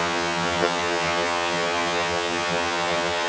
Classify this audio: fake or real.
fake